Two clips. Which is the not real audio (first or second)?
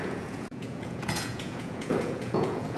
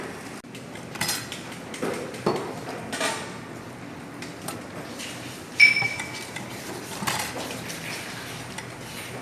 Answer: first